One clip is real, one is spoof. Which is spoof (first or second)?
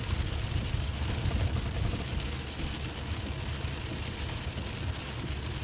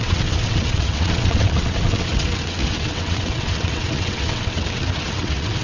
second